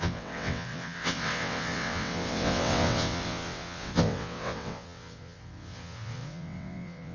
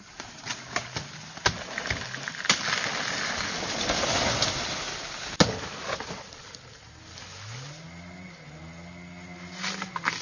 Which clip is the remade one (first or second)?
first